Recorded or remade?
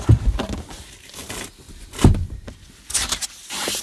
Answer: recorded